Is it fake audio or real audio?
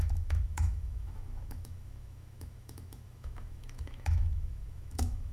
fake